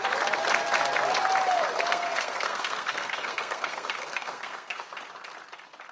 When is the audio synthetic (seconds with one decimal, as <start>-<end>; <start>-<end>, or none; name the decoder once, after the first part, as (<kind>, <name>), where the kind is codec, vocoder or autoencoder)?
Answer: 1.9-4.8 (codec, SNAC)